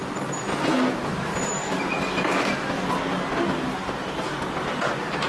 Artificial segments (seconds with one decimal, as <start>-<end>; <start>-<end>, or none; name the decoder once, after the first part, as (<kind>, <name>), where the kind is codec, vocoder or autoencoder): none